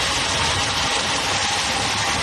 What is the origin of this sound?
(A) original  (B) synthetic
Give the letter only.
A